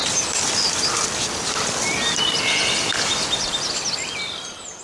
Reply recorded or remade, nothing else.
recorded